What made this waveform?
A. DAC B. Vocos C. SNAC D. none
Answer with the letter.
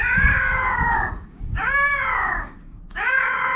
A